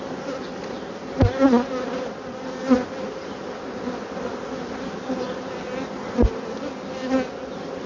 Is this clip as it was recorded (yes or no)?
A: yes